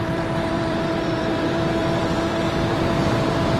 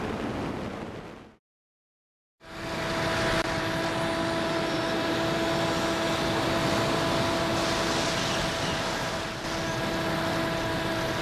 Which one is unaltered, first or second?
second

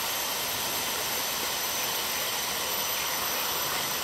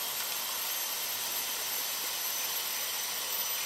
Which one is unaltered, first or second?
second